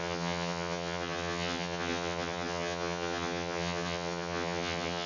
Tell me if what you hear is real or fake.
fake